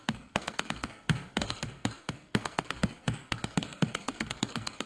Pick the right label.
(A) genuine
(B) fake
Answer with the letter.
B